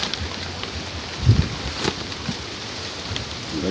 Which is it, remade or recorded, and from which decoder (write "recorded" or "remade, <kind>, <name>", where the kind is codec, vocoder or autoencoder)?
recorded